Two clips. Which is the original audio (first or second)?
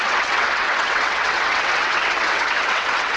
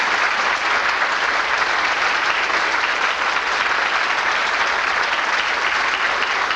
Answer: second